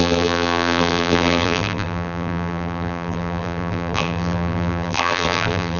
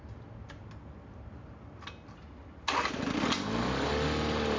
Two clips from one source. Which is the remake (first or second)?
first